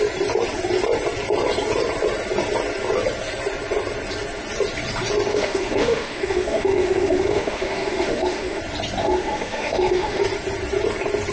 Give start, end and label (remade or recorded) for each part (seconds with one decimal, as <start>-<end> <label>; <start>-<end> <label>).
0.0-5.3 recorded; 5.3-8.6 remade; 8.6-9.0 recorded; 9.0-10.2 remade; 10.2-11.3 recorded